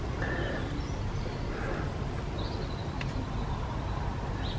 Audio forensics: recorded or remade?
recorded